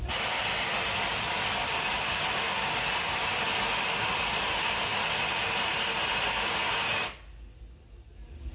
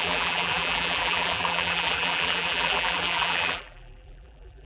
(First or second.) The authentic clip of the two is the first